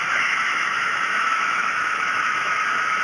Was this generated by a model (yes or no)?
yes